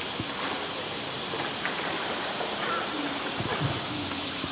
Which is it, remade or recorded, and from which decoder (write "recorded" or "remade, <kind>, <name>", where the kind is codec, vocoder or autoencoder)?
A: recorded